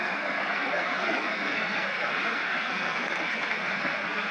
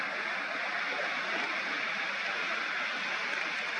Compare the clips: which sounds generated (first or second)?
first